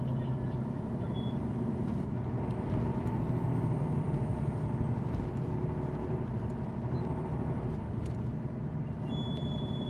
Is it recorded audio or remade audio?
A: recorded